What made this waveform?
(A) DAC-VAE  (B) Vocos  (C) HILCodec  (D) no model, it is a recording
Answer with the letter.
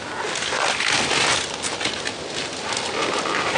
D